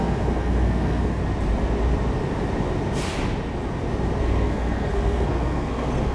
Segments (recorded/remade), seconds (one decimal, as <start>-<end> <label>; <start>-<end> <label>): 0.0-1.2 remade; 1.2-4.2 recorded; 4.2-6.1 remade